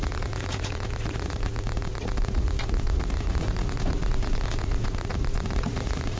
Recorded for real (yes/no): no